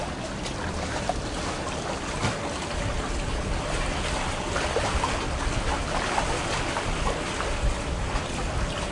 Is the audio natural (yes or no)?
yes